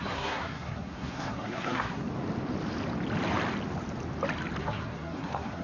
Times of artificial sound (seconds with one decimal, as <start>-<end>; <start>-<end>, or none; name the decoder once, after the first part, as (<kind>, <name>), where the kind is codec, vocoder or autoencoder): 0.0-2.0 (codec, SNAC); 4.6-5.6